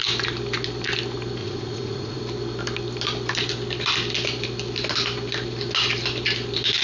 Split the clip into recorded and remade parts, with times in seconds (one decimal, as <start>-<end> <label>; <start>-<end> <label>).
0.0-1.4 recorded; 1.4-2.2 remade; 2.2-6.8 recorded